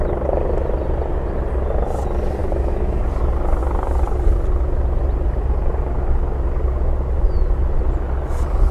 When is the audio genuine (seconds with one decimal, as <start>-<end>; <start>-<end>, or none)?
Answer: 0.0-2.4; 3.0-8.7